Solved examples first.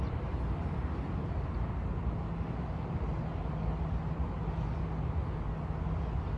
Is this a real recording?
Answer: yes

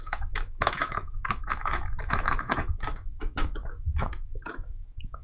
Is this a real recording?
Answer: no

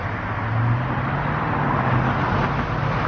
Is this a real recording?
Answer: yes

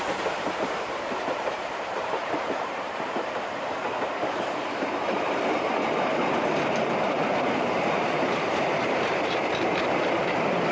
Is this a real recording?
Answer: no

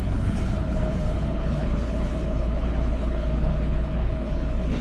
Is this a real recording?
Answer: no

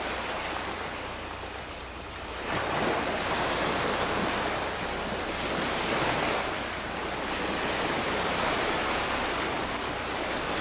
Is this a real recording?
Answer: yes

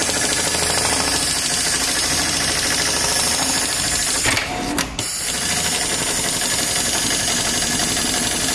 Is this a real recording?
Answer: yes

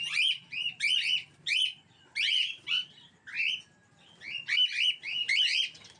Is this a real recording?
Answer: yes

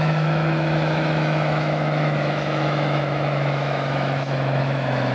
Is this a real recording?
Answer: no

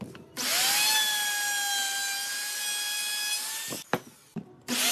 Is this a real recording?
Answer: yes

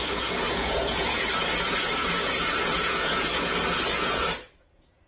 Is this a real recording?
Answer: no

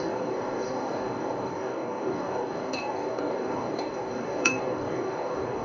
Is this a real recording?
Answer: no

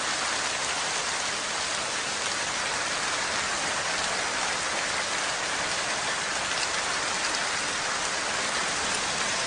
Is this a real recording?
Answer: yes